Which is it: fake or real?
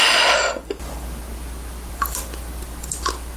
real